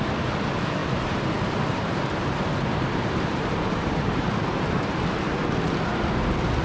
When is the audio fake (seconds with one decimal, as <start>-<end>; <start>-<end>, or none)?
0.8-4.8